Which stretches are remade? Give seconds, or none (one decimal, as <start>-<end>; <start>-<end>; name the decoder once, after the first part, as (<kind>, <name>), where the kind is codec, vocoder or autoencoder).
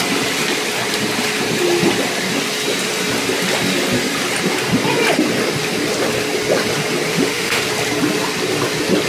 7.1-7.6 (autoencoder, DAC-VAE)